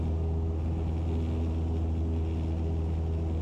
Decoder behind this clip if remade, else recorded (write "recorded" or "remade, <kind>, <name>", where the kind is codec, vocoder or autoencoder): recorded